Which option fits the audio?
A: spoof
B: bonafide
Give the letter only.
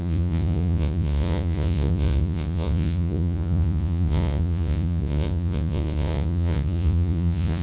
A